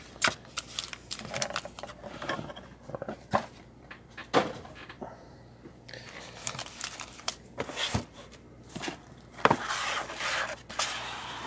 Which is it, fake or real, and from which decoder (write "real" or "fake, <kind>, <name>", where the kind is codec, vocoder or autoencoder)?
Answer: fake, vocoder, BigVGAN v2